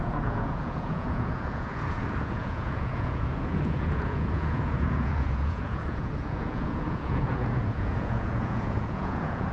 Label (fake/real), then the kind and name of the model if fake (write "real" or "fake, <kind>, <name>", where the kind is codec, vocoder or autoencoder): fake, vocoder, Vocos